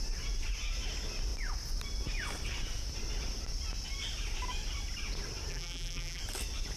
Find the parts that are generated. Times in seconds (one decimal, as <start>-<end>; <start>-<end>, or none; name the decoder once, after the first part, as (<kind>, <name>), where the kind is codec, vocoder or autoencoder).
5.5-6.2 (vocoder, BigVGAN v2)